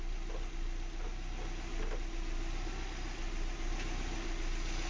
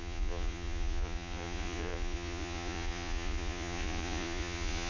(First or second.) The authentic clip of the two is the first